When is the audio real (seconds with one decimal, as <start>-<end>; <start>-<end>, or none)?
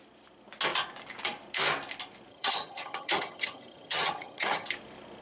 0.0-2.3; 4.7-5.2